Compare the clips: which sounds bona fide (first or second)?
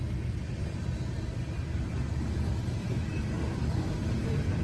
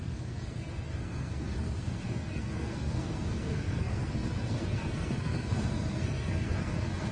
first